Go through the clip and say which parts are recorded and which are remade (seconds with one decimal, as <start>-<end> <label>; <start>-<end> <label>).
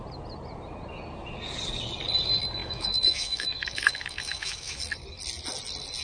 0.0-2.6 recorded; 2.6-4.8 remade; 4.8-6.0 recorded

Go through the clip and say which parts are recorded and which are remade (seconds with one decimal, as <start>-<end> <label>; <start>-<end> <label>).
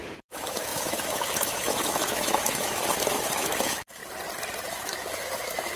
0.0-4.0 remade; 4.0-4.7 recorded; 4.7-5.8 remade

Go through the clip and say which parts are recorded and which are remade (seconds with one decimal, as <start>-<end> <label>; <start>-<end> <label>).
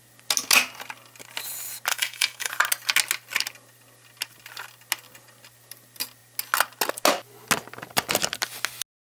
0.0-1.9 recorded; 1.9-2.5 remade; 2.5-9.0 recorded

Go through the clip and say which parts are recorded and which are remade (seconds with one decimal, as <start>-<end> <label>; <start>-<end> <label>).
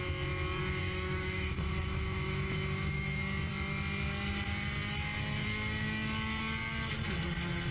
0.0-0.8 recorded; 0.8-3.2 remade; 3.2-7.7 recorded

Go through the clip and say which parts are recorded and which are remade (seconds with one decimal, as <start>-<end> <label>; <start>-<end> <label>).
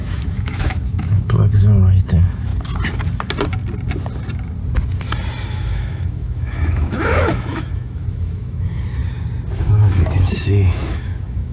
0.0-2.5 remade; 2.5-5.5 recorded; 5.5-9.0 remade; 9.0-9.6 recorded; 9.6-11.5 remade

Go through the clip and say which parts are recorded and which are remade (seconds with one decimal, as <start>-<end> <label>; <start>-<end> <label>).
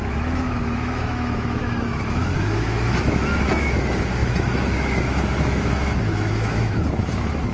0.0-7.5 remade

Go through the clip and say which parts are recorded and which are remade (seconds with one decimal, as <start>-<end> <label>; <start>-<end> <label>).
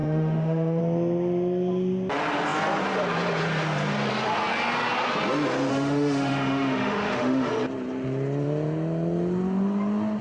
0.0-0.8 remade; 0.8-5.7 recorded; 5.7-7.5 remade; 7.5-10.2 recorded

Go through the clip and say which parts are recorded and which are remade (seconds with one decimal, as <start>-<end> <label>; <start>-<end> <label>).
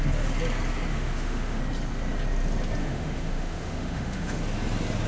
0.0-0.9 recorded; 0.9-1.6 remade; 1.6-2.8 recorded; 2.8-4.4 remade; 4.4-5.1 recorded